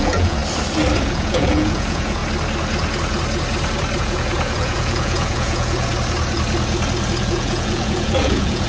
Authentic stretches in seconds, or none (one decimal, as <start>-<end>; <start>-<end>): 0.4-1.1; 2.2-4.0; 5.9-7.2